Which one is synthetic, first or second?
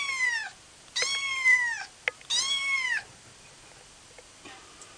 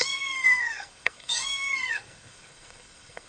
second